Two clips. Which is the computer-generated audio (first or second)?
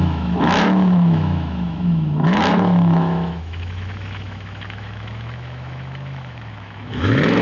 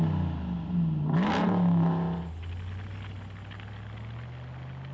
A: first